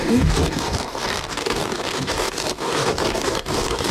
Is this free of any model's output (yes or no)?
no